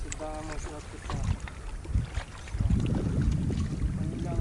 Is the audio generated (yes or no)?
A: no